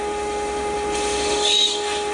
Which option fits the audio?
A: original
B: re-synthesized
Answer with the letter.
B